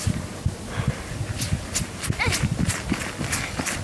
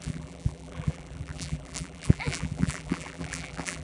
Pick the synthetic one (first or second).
second